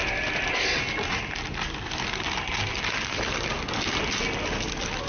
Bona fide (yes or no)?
yes